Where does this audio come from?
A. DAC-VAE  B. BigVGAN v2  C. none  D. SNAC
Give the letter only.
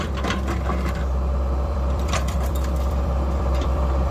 B